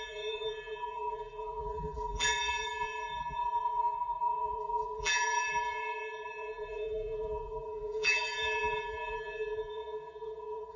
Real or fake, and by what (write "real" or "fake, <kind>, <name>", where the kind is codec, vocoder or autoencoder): fake, vocoder, BigVGAN v2